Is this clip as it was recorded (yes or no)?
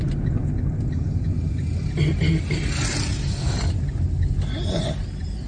yes